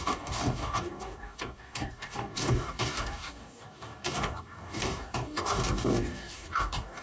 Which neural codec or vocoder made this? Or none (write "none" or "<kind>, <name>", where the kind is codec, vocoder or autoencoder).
codec, DAC